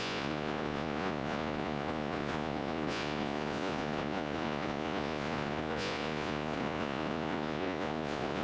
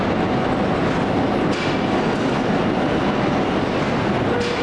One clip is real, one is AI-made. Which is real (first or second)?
second